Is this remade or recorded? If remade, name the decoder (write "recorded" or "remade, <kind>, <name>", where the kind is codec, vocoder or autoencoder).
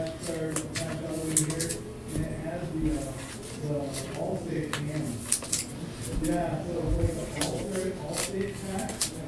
recorded